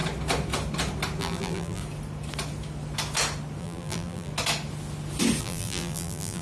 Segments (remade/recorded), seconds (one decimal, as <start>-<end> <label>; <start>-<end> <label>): 0.0-1.2 recorded; 1.2-1.8 remade; 1.8-3.6 recorded; 3.6-4.3 remade; 4.3-5.4 recorded; 5.4-6.4 remade